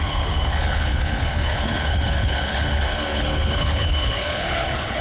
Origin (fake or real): fake